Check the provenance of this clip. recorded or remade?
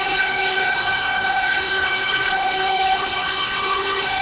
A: remade